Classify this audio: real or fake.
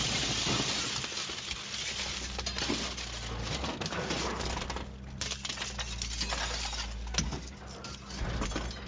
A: real